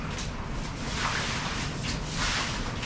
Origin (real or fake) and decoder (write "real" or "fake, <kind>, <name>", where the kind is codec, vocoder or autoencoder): real